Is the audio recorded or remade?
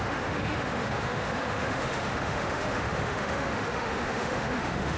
remade